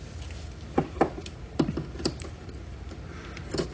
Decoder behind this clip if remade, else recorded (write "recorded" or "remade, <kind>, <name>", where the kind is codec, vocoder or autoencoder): recorded